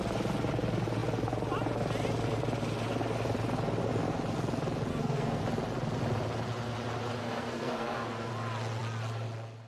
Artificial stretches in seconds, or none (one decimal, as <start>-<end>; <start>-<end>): 4.9-5.4; 7.2-8.3